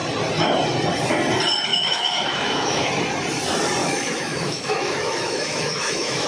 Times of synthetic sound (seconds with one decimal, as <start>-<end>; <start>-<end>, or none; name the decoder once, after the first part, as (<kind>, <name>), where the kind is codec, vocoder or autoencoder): 1.7-2.9 (autoencoder, DAC-VAE); 3.8-6.3